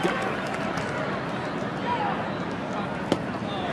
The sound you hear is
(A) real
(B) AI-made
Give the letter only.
A